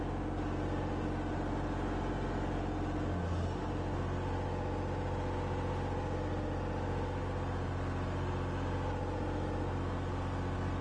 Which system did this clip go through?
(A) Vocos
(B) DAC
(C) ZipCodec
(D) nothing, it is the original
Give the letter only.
D